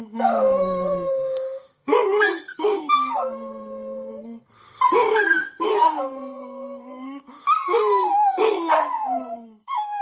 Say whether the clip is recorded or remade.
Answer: remade